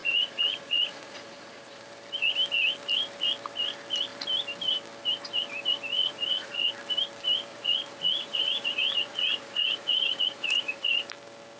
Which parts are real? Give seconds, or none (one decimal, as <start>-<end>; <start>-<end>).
1.8-6.0; 6.7-7.5; 10.9-11.6